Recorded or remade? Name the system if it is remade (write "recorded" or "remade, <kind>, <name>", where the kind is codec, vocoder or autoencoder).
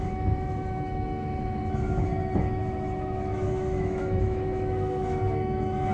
remade, autoencoder, DAC-VAE